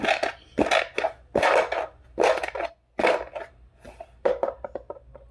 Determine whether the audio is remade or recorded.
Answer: recorded